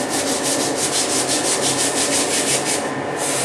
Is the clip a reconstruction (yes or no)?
no